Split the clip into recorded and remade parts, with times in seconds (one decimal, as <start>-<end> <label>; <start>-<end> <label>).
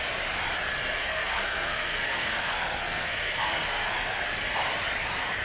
0.0-1.0 recorded; 1.0-4.2 remade; 4.2-5.4 recorded